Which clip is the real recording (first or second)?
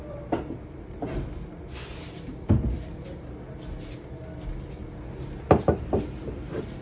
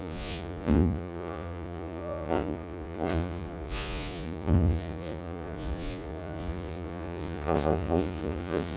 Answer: first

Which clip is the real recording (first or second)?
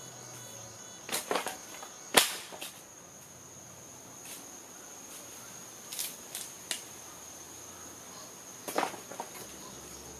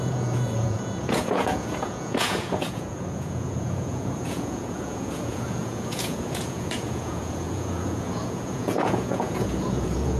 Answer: first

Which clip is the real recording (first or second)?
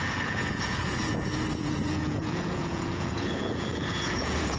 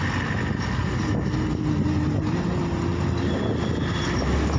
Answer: second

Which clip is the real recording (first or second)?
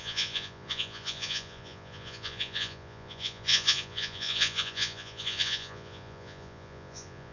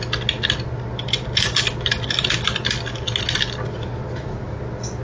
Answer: second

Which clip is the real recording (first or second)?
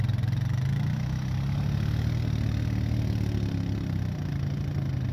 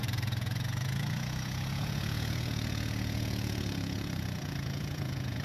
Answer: first